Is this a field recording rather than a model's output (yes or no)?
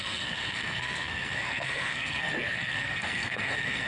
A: no